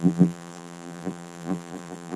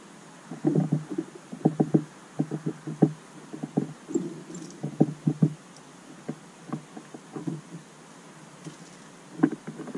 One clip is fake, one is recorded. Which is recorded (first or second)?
second